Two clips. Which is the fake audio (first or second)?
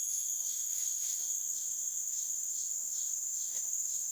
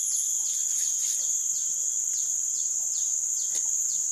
first